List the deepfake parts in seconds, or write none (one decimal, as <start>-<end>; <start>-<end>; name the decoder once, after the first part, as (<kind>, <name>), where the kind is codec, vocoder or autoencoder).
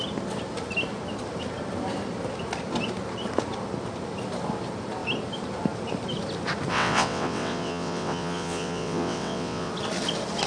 6.7-9.7 (vocoder, WaveNeXt)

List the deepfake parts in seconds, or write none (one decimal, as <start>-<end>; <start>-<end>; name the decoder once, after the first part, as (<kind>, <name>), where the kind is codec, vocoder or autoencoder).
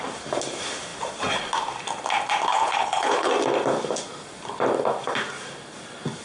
2.5-3.3 (codec, HILCodec)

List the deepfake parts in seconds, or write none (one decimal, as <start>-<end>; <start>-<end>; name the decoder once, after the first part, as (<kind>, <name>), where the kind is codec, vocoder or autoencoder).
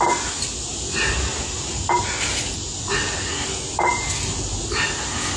none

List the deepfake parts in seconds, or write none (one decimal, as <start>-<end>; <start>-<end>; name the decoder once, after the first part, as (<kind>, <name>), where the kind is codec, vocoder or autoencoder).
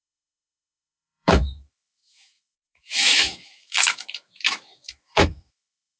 0.0-6.0 (autoencoder, DAC-VAE)